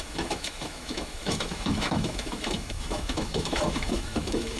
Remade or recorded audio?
remade